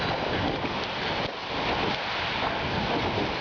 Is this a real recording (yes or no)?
yes